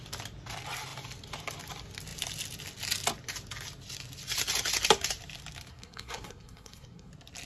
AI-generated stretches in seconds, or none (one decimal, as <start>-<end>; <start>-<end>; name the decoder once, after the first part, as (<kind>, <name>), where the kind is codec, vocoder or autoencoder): 5.7-7.1 (codec, SNAC)